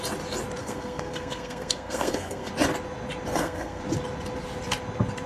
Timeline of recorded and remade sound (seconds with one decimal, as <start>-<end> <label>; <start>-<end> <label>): 0.0-0.6 recorded; 0.6-2.5 remade; 2.5-3.3 recorded; 3.3-3.8 remade; 3.8-5.3 recorded